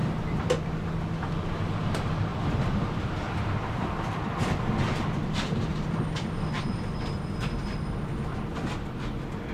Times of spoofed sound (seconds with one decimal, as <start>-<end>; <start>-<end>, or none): 0.0-0.5; 2.3-4.6; 5.7-8.4